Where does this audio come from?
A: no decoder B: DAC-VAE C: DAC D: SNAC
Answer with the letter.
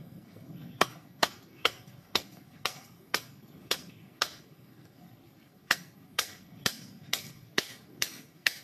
D